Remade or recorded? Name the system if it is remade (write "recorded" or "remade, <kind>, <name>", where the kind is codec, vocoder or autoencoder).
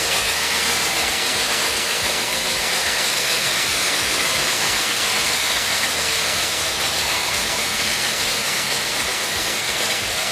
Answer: remade, codec, SNAC